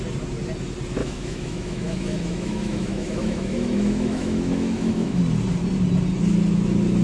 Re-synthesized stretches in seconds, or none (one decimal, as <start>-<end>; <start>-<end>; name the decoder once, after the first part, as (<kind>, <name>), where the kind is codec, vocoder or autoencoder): 1.0-5.2 (autoencoder, DAC-VAE)